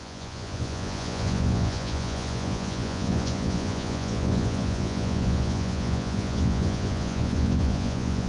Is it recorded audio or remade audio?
remade